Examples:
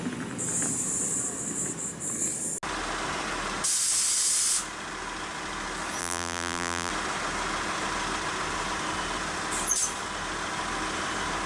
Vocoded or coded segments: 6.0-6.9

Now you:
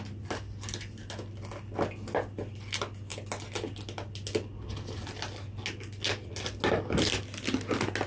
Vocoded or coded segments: none

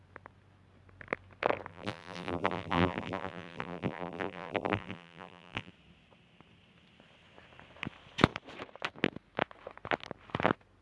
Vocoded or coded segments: 1.7-5.7

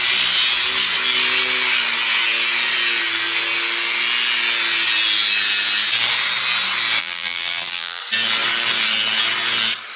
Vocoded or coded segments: 7.0-8.0

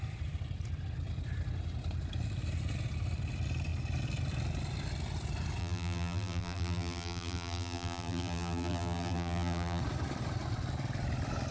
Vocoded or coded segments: 5.6-9.8

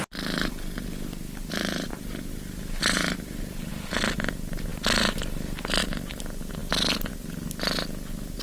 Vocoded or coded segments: 1.9-3.7

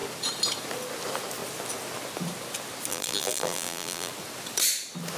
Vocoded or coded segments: 2.9-4.1

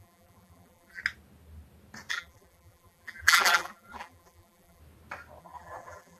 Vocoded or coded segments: 0.0-1.0; 2.1-4.8; 5.4-6.2